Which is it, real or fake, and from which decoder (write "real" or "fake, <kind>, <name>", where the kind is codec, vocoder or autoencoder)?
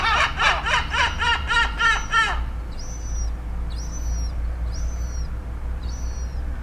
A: real